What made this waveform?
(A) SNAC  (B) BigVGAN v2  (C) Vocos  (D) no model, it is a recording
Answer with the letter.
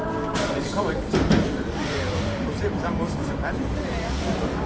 B